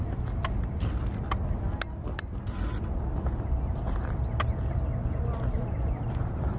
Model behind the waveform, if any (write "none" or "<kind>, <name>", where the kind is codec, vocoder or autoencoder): none